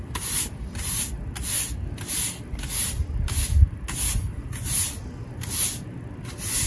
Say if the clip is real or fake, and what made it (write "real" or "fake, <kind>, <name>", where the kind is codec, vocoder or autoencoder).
real